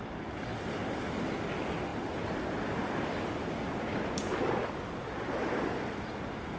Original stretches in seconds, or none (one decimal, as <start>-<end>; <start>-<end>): 0.0-6.6